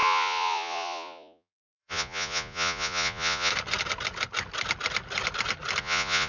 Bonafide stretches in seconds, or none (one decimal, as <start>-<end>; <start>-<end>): 3.5-5.8